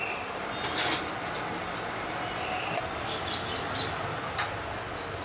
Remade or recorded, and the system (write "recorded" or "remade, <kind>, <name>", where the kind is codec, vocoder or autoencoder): recorded